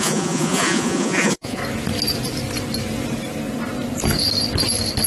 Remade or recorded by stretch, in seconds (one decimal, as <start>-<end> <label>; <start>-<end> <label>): 0.0-1.6 remade; 1.6-5.1 recorded